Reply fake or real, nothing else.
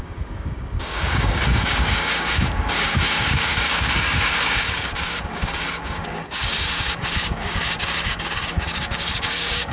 fake